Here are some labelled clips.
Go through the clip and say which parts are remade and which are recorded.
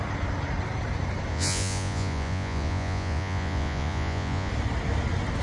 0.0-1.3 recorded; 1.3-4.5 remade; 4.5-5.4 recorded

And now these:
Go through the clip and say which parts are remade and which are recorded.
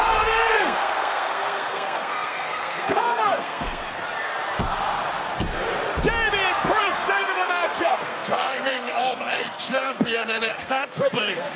0.0-3.8 remade; 3.8-6.8 recorded; 6.8-11.6 remade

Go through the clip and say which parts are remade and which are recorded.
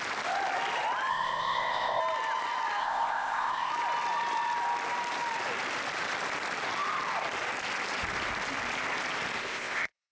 0.0-1.1 recorded; 1.1-2.0 remade; 2.0-2.8 recorded; 2.8-3.7 remade; 3.7-9.4 recorded; 9.4-10.1 remade